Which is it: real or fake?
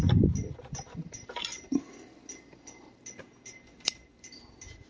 real